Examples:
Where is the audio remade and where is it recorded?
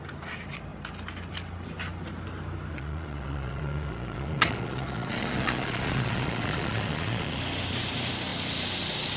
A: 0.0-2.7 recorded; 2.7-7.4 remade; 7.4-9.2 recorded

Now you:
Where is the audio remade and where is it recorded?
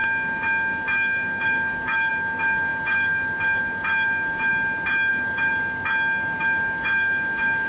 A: 0.0-4.5 remade; 4.5-5.1 recorded; 5.1-5.5 remade; 5.5-6.4 recorded; 6.4-7.7 remade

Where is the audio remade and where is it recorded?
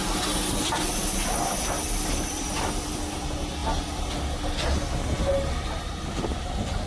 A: 0.0-6.9 recorded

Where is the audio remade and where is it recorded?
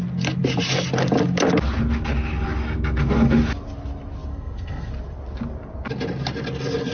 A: 0.0-4.3 recorded; 4.3-4.9 remade; 4.9-6.9 recorded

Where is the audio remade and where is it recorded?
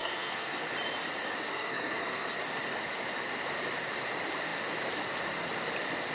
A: 0.0-0.7 remade; 0.7-1.5 recorded; 1.5-2.4 remade; 2.4-6.1 recorded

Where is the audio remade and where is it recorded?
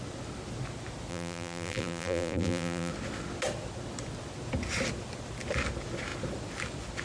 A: 0.0-1.1 recorded; 1.1-2.9 remade; 2.9-7.0 recorded